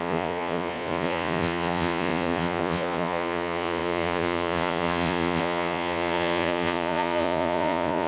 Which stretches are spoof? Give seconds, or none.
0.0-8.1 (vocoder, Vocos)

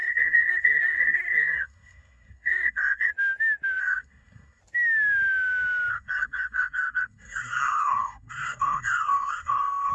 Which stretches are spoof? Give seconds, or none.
0.0-3.1 (codec, SNAC); 3.8-4.6; 5.9-9.9

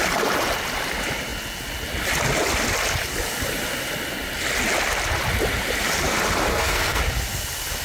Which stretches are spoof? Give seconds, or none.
6.5-7.0 (codec, SNAC)

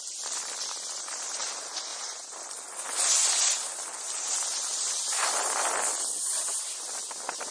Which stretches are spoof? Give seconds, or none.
none